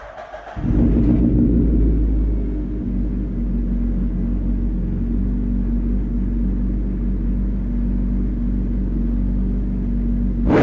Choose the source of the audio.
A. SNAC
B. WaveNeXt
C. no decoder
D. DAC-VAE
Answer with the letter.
C